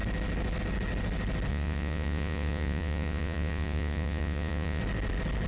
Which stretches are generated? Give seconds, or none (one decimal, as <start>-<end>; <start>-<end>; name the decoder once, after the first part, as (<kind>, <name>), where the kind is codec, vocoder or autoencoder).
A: 1.5-4.8 (vocoder, Vocos)